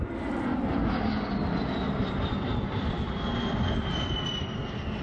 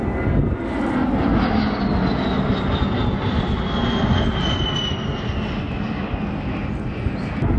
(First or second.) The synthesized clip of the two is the first